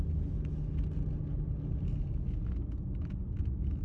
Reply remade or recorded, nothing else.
recorded